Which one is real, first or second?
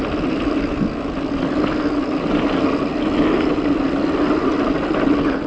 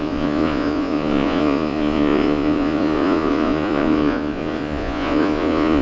first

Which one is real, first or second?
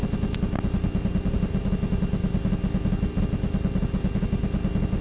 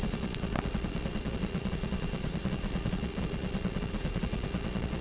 first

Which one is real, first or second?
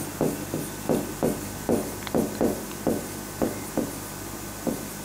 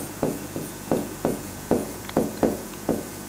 first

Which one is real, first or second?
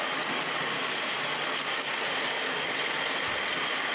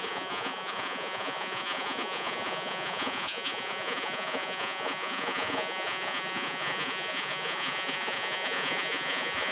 first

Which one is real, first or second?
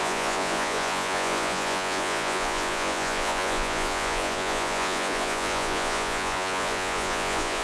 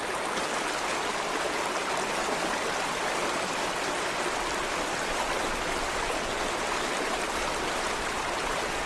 second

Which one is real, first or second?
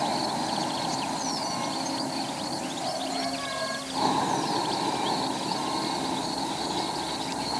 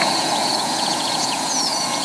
first